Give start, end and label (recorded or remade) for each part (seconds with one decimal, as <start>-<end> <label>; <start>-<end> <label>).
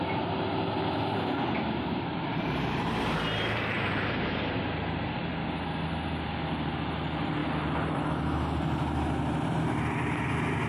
0.0-2.3 recorded; 2.3-4.6 remade; 4.6-10.7 recorded